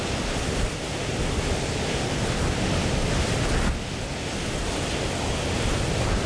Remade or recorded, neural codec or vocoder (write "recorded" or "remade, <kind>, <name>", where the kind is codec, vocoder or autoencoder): recorded